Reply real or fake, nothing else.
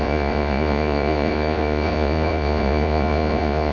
fake